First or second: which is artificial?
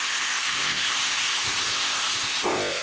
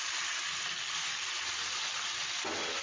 first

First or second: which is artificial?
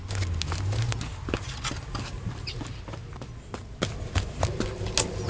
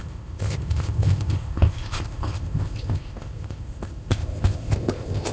second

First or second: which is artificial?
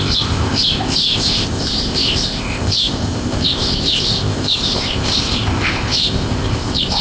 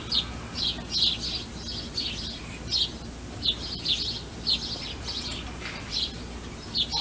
first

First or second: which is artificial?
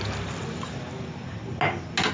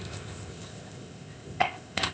second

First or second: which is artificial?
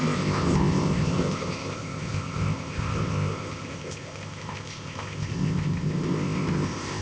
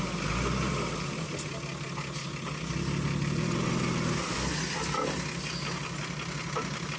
first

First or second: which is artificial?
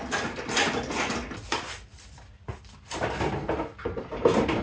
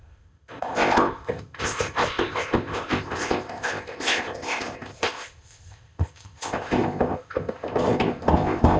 second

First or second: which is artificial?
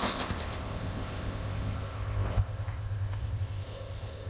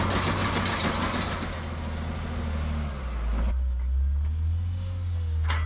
first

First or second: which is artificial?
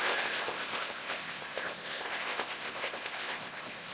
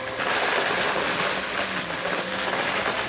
first